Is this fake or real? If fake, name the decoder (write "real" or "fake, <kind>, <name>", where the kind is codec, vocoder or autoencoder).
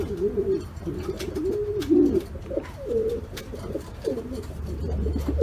fake, vocoder, BigVGAN v2